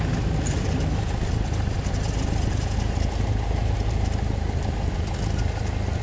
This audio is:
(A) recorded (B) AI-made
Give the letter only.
A